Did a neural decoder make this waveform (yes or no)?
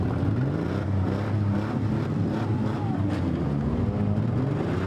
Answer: no